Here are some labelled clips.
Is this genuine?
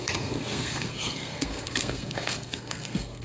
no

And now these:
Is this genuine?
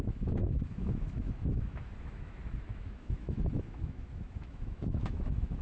no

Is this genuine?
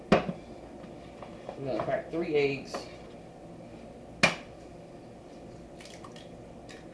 yes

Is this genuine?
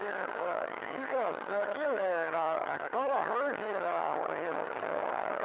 no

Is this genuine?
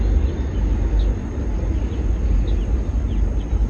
yes